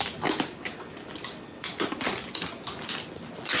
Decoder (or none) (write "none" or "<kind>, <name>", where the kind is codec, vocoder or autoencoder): none